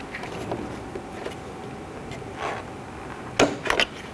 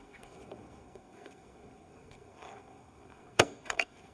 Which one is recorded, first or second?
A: first